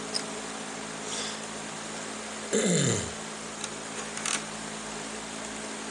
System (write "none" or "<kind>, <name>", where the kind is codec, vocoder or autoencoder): none